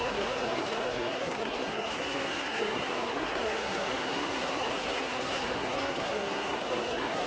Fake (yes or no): yes